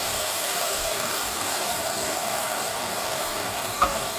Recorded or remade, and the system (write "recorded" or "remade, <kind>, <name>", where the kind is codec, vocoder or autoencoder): remade, codec, DAC